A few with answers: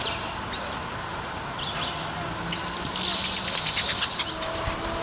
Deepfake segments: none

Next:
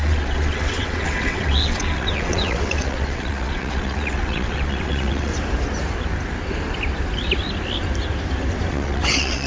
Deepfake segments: 0.0-5.3 (vocoder, WaveNeXt); 8.7-9.5